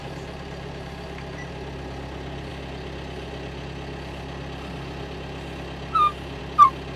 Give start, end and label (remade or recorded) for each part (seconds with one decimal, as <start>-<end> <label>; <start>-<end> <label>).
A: 0.0-1.5 remade; 1.5-7.0 recorded